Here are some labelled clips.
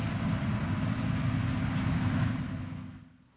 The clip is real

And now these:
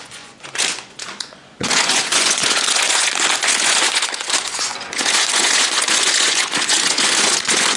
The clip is fake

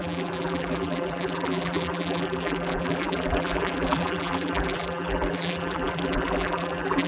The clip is fake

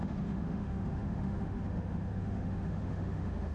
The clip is fake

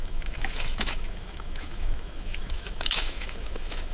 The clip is fake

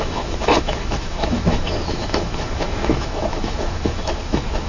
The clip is fake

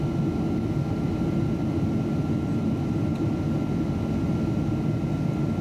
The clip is real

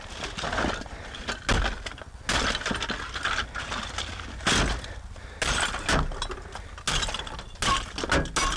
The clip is real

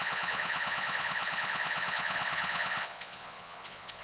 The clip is fake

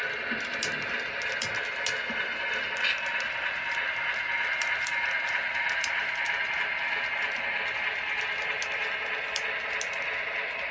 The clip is real